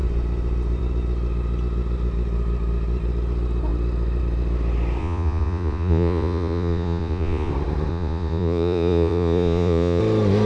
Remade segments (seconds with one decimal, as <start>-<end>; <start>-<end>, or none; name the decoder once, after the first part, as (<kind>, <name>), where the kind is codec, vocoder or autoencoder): 5.0-7.5 (vocoder, Vocos); 7.9-10.0